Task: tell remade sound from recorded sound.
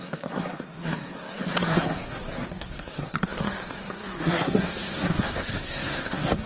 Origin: remade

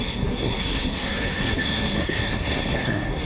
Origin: remade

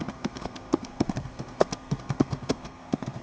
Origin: remade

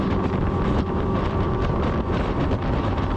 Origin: recorded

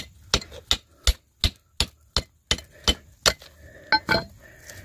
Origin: recorded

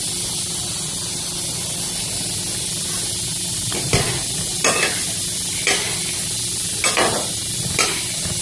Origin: recorded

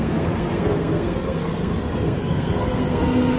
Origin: remade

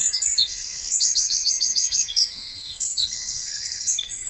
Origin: remade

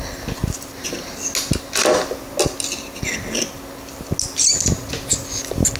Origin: recorded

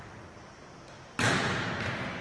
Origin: recorded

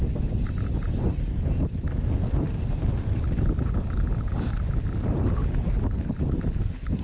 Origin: recorded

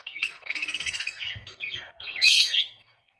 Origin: remade